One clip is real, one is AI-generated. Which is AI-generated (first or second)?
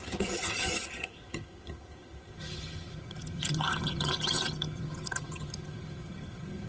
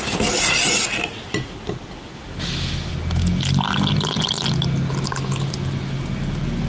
first